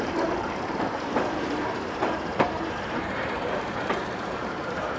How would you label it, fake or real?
fake